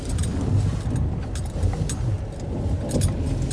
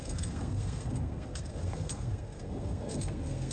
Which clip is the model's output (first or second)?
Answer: second